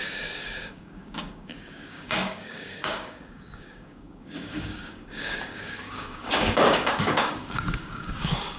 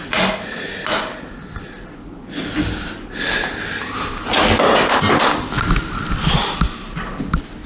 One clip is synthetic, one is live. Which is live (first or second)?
second